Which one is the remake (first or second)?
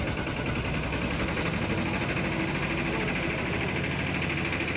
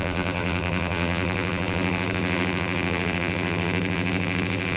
second